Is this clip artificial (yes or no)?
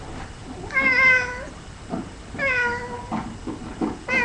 no